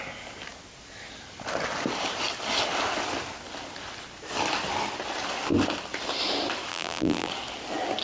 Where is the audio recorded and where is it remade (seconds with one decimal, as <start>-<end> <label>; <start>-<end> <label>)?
0.0-6.7 recorded; 6.7-7.3 remade; 7.3-8.0 recorded